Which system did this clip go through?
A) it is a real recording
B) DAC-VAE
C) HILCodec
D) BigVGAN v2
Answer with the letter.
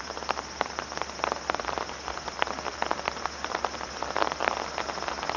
A